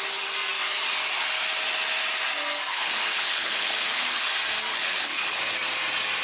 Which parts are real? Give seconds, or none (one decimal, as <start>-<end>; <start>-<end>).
0.0-2.7; 4.3-4.7; 5.4-6.2